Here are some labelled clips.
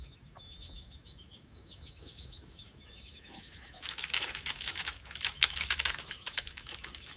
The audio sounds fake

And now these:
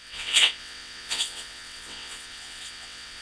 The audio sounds fake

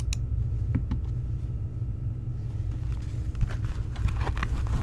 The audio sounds real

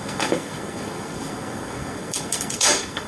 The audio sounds fake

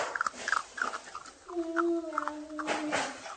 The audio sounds real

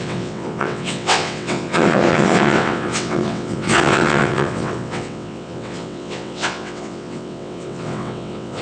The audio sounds fake